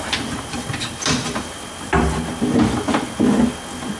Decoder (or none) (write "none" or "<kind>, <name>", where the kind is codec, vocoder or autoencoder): none